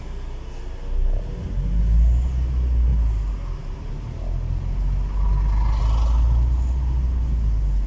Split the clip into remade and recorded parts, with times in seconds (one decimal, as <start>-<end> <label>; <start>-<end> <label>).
0.0-7.9 recorded